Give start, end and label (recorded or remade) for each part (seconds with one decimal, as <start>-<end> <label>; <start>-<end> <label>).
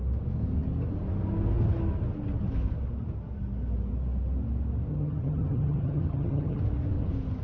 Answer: 0.0-4.9 recorded; 4.9-6.6 remade; 6.6-7.4 recorded